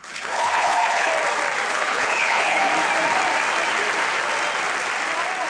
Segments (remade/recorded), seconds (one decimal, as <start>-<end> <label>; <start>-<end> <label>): 0.0-1.1 remade; 1.1-1.7 recorded; 1.7-2.7 remade; 2.7-5.5 recorded